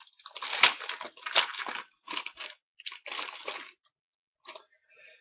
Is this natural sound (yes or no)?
yes